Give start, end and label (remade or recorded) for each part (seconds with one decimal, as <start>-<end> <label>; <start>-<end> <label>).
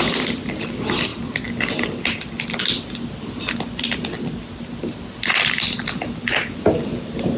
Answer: 0.0-7.4 recorded